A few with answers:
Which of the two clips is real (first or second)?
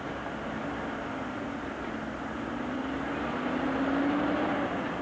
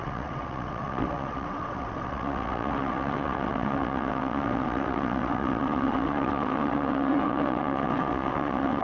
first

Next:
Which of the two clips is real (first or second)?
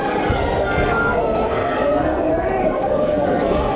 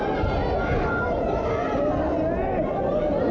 second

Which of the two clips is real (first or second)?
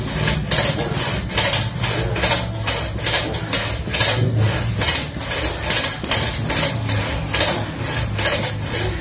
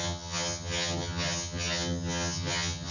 first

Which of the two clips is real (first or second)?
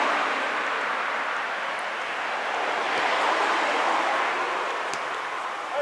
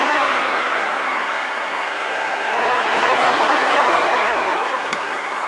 first